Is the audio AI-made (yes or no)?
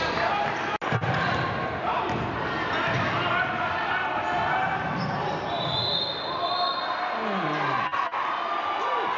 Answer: no